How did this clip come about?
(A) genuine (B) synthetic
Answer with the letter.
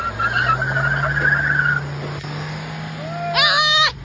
A